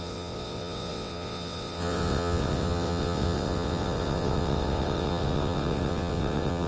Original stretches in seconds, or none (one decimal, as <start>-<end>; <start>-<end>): none